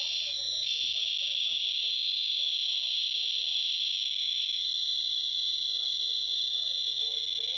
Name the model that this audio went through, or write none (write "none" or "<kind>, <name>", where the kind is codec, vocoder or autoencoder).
none